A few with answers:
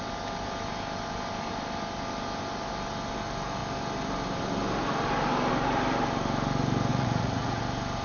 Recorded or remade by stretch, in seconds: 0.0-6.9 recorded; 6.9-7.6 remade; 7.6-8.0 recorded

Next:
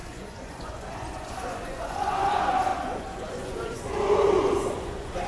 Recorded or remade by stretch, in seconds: 0.0-5.3 remade

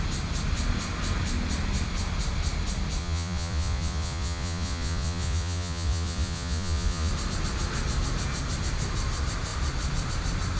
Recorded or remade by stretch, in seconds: 0.0-3.0 recorded; 3.0-7.1 remade; 7.1-10.6 recorded

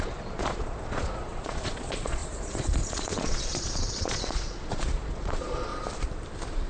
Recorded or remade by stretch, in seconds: 0.0-5.7 remade; 5.7-6.7 recorded

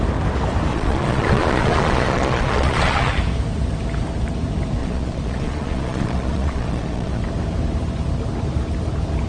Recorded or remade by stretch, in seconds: 0.0-0.7 recorded; 0.7-3.2 remade; 3.2-4.8 recorded; 4.8-7.2 remade; 7.2-9.3 recorded

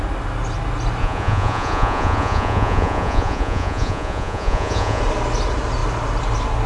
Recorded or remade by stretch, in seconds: 0.0-1.0 recorded; 1.0-5.0 remade; 5.0-6.7 recorded